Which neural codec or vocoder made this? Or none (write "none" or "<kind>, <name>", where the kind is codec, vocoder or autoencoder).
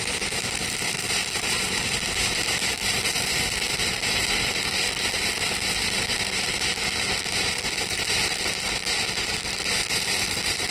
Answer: vocoder, BigVGAN v2